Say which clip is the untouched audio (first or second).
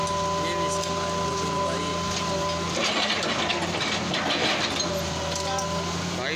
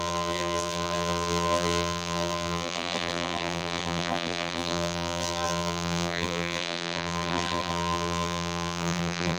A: first